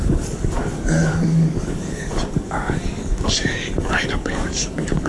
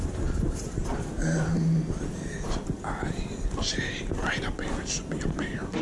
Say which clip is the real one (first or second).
second